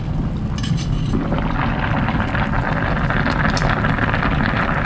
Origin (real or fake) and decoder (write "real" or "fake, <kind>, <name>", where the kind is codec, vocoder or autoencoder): real